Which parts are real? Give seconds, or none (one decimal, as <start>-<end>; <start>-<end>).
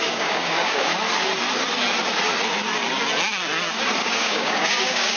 0.9-4.0